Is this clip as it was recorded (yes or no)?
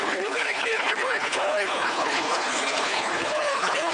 no